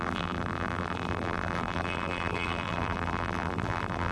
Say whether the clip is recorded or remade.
remade